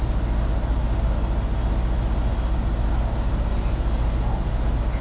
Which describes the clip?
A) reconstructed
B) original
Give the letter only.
B